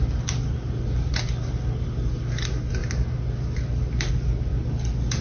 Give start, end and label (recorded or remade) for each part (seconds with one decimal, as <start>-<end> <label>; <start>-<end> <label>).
0.0-5.2 recorded